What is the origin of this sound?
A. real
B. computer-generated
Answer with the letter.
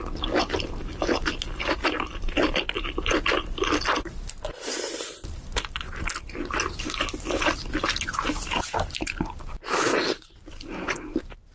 A